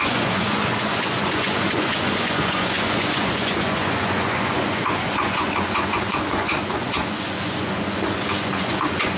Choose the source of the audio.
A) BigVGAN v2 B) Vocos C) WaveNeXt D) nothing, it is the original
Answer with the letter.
B